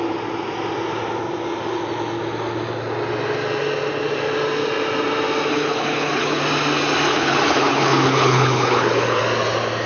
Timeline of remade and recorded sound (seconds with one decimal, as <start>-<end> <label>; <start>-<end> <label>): 0.0-5.5 recorded; 5.5-6.4 remade; 6.4-7.1 recorded; 7.1-9.2 remade; 9.2-9.9 recorded